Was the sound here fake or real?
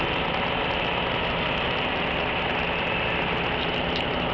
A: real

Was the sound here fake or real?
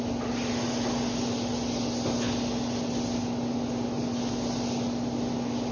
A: real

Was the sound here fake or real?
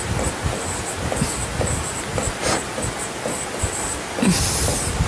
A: real